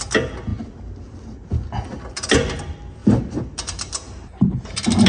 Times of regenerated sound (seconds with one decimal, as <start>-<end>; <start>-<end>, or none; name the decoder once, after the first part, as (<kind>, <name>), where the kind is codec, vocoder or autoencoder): 3.0-5.1 (vocoder, BigVGAN v2)